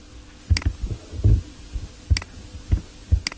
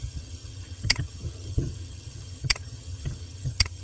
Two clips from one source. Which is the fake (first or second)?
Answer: second